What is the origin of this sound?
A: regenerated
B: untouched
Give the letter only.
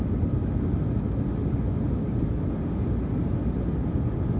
B